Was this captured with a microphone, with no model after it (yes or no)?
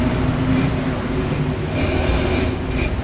yes